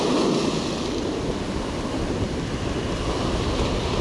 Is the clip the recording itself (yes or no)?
yes